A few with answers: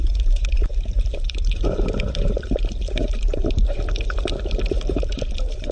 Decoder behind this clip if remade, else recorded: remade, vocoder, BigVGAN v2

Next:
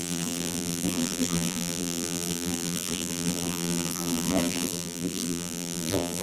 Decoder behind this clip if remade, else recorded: remade, vocoder, BigVGAN v2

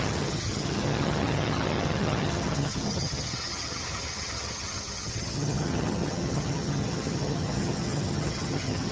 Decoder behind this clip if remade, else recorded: remade, vocoder, HiFi-GAN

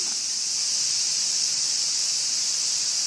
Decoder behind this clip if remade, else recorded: remade, vocoder, BigVGAN v2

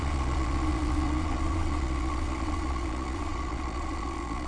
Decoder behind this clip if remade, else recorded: remade, vocoder, Vocos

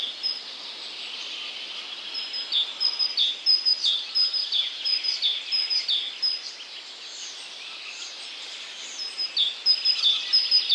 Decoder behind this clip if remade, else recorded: recorded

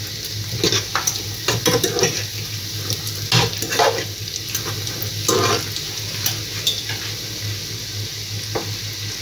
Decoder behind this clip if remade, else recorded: recorded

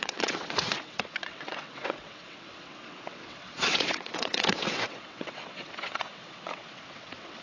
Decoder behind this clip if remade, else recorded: remade, vocoder, WaveNeXt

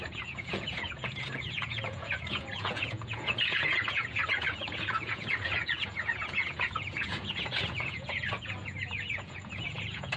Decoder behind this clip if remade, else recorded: remade, vocoder, Vocos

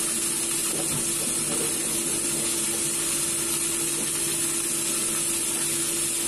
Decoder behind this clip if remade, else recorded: recorded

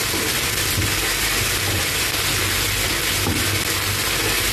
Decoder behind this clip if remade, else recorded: recorded